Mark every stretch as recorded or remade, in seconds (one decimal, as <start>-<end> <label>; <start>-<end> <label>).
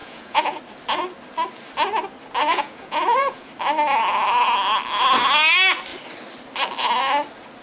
0.0-0.6 remade; 0.6-2.4 recorded; 2.4-3.5 remade; 3.5-7.6 recorded